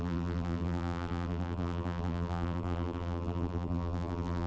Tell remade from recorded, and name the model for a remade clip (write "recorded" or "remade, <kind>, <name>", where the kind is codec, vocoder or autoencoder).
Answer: remade, vocoder, BigVGAN v2